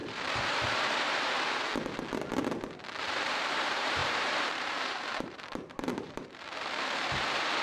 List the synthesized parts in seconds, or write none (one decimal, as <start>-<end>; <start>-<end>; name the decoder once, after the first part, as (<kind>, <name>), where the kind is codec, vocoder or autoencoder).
0.0-1.7 (vocoder, BigVGAN v2); 3.0-7.6